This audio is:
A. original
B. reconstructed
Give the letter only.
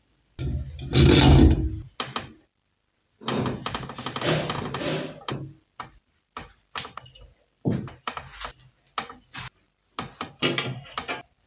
A